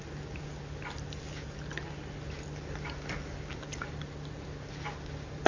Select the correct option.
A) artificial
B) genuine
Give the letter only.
B